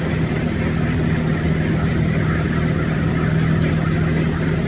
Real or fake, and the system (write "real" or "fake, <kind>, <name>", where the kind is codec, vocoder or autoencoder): real